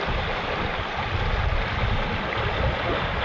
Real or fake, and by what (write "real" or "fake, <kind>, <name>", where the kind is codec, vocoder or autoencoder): real